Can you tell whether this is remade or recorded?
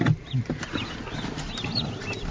recorded